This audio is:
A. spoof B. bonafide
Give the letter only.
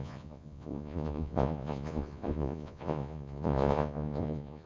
A